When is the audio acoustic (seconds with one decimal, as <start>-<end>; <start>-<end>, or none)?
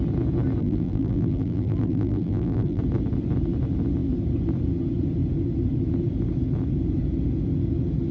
0.0-0.6; 2.8-8.1